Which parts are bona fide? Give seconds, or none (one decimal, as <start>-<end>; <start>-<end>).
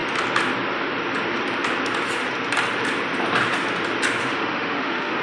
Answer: 0.0-4.2